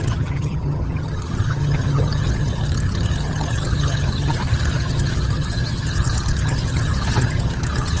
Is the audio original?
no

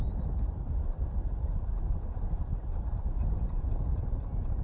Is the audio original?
yes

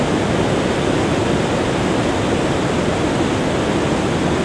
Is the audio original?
yes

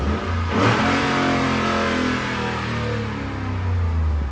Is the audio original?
yes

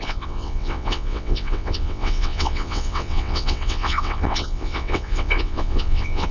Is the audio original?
no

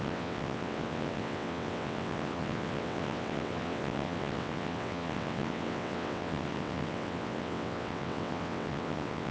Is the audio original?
no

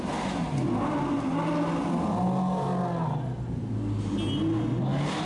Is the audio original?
yes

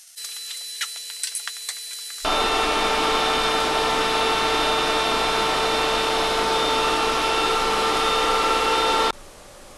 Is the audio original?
yes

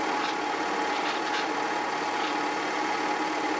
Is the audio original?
yes